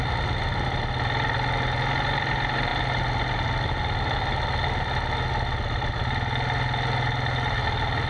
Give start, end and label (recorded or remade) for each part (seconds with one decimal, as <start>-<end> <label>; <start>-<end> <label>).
0.0-8.1 recorded